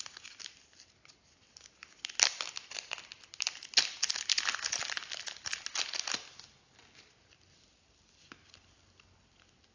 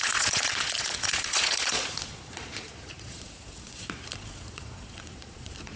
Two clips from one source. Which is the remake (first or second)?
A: second